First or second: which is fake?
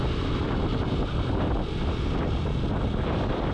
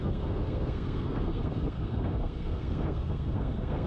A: second